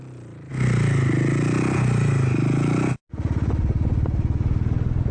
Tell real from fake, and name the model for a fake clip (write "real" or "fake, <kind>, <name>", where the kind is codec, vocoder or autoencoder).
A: real